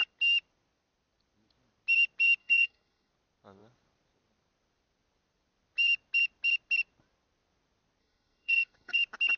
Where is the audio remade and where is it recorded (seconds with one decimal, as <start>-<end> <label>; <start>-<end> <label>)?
0.0-2.4 recorded; 2.4-3.1 remade; 3.1-8.0 recorded; 8.0-9.0 remade; 9.0-9.4 recorded